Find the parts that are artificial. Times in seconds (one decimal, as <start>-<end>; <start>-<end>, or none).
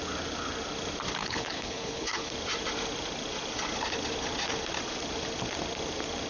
1.2-2.3